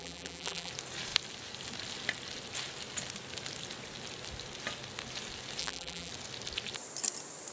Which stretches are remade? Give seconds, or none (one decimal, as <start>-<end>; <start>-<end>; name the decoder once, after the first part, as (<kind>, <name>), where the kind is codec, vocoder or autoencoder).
0.0-0.7 (vocoder, BigVGAN v2); 5.6-6.1